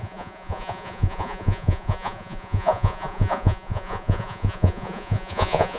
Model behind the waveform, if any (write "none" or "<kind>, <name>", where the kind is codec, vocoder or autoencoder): vocoder, Vocos